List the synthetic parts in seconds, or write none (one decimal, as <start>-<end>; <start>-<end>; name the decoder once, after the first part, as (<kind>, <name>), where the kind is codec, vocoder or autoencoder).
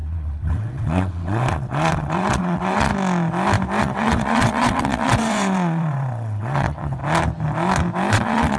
0.0-2.9 (vocoder, WaveNeXt); 3.8-7.0; 8.1-8.6